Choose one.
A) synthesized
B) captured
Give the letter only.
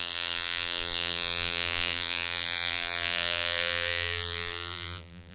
A